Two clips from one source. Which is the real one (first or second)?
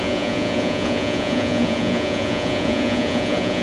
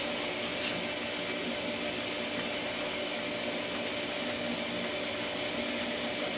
second